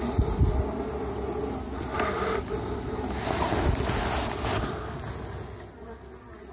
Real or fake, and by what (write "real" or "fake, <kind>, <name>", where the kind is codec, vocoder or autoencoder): real